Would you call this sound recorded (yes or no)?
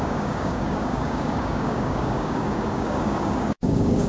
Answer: no